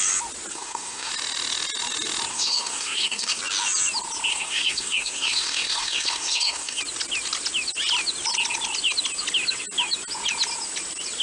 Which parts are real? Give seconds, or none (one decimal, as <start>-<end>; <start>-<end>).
0.0-0.5; 1.1-2.3; 3.4-4.3; 6.8-11.2